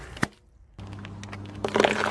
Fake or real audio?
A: real